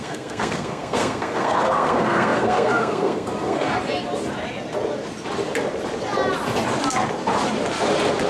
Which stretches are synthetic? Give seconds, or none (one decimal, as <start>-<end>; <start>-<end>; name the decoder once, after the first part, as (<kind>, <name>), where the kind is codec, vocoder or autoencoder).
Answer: 0.0-3.7 (codec, SNAC)